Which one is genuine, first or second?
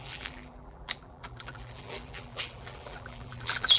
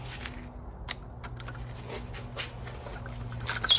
second